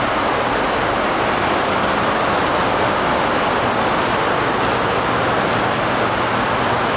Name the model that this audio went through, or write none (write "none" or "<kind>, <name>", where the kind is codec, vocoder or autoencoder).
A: none